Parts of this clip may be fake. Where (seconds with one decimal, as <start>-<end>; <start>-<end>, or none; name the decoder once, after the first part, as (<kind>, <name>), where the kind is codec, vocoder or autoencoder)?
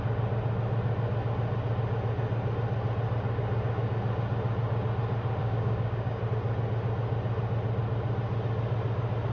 5.4-6.2 (codec, DAC)